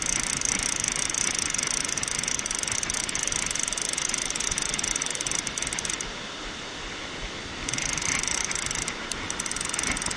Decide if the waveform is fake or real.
real